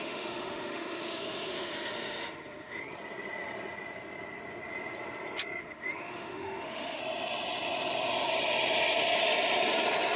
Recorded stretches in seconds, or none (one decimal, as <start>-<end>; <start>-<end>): 2.8-5.6; 7.0-10.2